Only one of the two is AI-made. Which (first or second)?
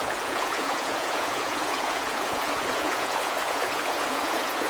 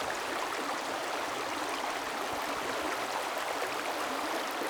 first